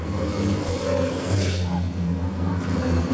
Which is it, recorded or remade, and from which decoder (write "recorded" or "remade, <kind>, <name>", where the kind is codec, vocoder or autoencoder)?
remade, codec, SNAC